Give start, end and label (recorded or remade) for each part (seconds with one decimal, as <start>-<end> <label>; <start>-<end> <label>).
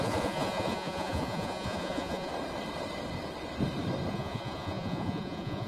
0.0-2.3 remade; 2.3-4.1 recorded; 4.1-5.7 remade